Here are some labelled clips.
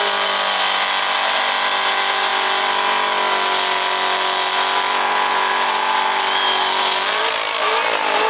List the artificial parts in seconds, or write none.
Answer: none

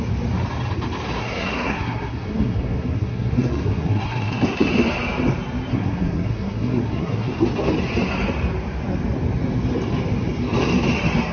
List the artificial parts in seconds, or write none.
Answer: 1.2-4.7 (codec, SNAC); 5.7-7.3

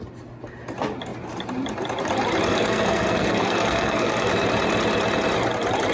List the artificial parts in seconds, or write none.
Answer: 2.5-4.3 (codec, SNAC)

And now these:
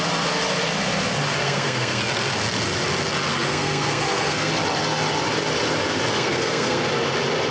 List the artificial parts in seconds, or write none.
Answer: 1.4-2.0 (codec, SNAC); 3.3-4.5; 6.1-6.9

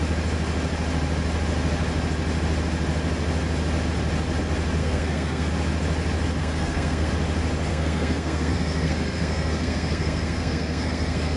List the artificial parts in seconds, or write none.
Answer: 4.8-5.5 (codec, SNAC); 6.4-7.1; 7.7-11.4

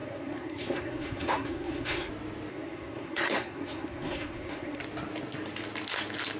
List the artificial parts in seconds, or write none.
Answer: 0.0-2.1 (codec, SNAC); 2.5-4.8

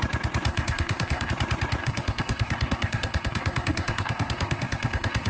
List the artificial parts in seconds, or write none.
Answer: 0.5-1.3 (codec, SNAC); 1.8-5.3